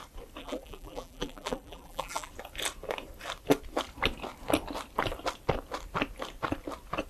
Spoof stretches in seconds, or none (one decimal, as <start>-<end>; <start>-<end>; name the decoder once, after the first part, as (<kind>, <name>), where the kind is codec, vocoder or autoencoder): 0.4-2.3 (vocoder, BigVGAN v2)